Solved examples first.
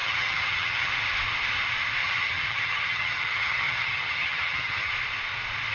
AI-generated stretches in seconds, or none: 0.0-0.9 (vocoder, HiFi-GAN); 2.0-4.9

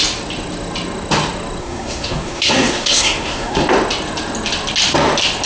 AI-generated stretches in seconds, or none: 1.6-3.6 (codec, SNAC)

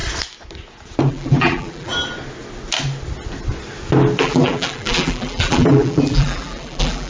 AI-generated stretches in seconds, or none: 1.1-1.9 (vocoder, BigVGAN v2); 4.2-7.1

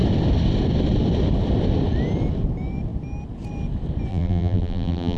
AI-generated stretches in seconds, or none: 4.1-5.2 (vocoder, BigVGAN v2)

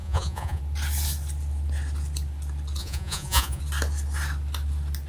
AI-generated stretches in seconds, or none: 0.0-0.6 (vocoder, Vocos); 2.8-3.6

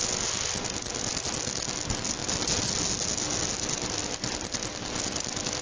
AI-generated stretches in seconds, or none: none